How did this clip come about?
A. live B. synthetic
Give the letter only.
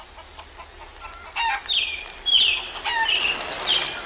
A